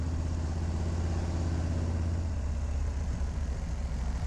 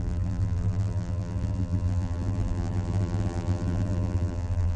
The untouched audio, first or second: first